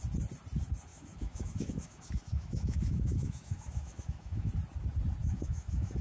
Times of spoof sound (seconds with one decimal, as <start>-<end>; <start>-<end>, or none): 0.9-4.5; 5.2-6.0

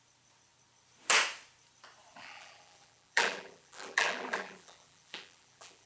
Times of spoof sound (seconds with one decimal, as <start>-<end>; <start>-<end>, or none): 2.1-5.9

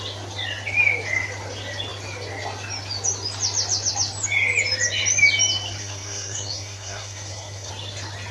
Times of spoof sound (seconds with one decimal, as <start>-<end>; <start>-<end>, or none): 5.8-7.7

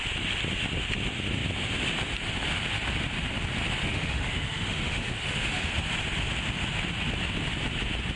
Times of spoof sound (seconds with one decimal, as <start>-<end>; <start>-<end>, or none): 3.8-5.7